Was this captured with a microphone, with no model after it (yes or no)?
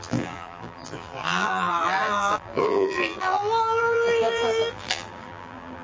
no